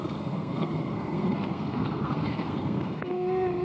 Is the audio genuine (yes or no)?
no